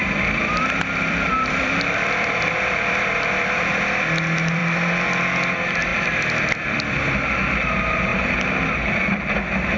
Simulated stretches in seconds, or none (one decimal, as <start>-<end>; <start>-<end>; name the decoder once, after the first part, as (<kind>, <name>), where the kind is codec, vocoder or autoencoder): 0.0-3.8 (vocoder, BigVGAN v2); 5.9-6.9